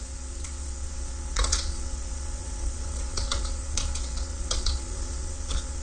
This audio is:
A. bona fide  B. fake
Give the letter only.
B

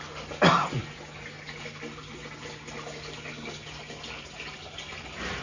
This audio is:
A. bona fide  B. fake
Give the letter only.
A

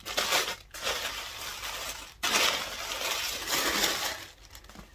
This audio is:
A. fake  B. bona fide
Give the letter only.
B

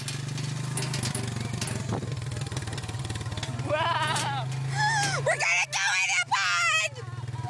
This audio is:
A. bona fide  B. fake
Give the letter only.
A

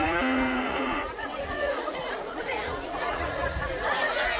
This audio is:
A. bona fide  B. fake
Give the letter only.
B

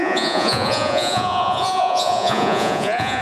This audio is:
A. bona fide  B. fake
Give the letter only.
B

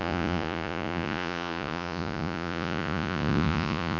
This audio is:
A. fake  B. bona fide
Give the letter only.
A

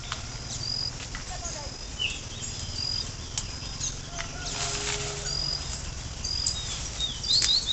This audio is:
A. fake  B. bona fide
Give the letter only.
B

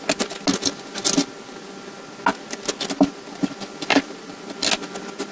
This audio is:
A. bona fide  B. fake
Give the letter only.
A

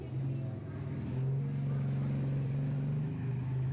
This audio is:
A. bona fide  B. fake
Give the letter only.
A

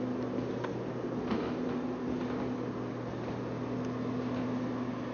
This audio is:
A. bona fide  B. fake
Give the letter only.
A